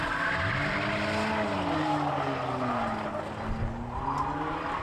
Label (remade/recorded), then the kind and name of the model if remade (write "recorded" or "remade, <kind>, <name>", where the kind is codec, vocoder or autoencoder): recorded